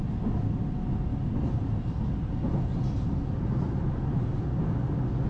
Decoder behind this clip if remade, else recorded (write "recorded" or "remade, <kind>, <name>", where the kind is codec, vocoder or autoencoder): recorded